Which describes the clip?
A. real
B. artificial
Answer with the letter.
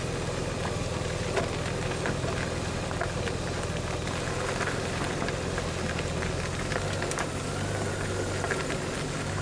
A